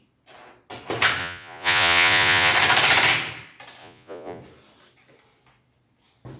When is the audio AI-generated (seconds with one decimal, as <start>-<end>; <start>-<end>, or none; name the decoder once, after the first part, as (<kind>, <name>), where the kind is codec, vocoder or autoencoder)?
1.2-2.5 (vocoder, Vocos); 3.8-4.4